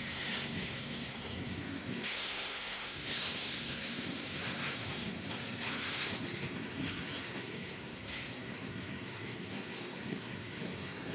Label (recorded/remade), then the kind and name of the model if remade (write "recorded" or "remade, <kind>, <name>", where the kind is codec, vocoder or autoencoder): remade, codec, SNAC